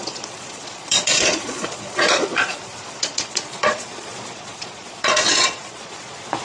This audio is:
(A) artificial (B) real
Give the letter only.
A